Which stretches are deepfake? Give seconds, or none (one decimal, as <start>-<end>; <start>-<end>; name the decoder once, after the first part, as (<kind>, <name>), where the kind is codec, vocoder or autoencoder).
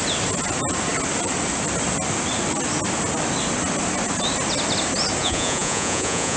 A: 5.2-6.4 (vocoder, Vocos)